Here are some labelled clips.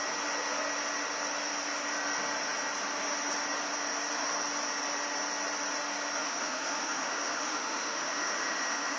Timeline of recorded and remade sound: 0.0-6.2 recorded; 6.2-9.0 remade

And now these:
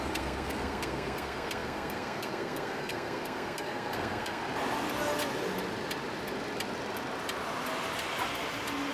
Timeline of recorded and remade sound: 0.0-4.4 remade; 4.4-8.9 recorded

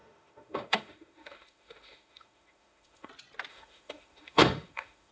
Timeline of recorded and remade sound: 0.0-3.1 remade; 3.1-3.5 recorded; 3.5-5.1 remade

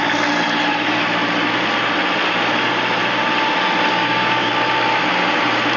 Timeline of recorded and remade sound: 0.0-3.9 recorded; 3.9-4.5 remade; 4.5-5.8 recorded